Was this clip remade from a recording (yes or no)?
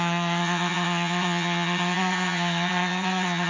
yes